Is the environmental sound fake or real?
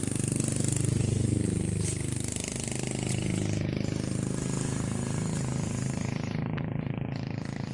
real